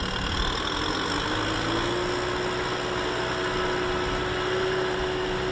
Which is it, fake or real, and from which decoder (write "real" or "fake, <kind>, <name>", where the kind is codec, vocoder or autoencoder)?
real